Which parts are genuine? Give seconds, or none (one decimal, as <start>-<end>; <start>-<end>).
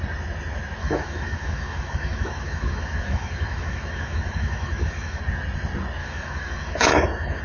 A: 0.0-0.8; 5.2-6.0